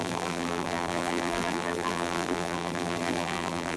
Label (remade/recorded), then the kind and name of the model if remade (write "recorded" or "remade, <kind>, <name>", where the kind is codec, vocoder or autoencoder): remade, vocoder, BigVGAN v2